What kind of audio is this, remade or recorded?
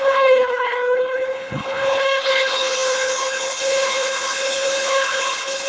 remade